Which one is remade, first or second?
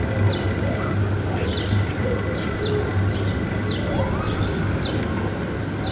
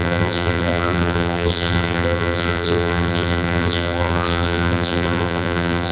second